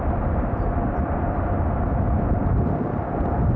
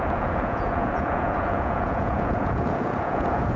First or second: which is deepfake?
second